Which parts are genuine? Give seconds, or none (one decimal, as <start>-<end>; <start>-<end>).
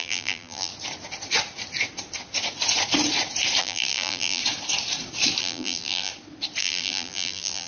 0.7-3.6; 4.4-5.4; 6.1-6.6